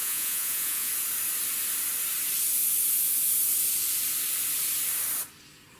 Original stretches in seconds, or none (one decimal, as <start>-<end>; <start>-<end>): 0.9-5.8